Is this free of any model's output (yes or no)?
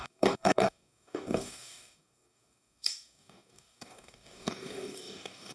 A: no